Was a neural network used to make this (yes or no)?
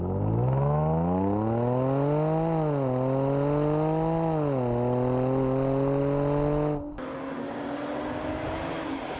no